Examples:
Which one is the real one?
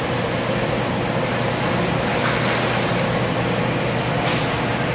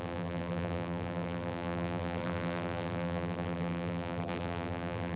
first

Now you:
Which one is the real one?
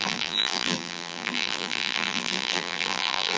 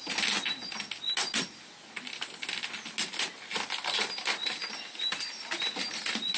second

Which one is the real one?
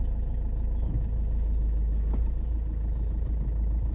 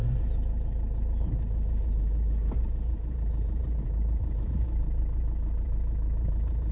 first